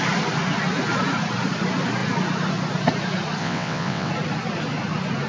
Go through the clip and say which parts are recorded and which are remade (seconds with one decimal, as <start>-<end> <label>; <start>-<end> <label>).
0.0-3.4 recorded; 3.4-4.1 remade; 4.1-5.3 recorded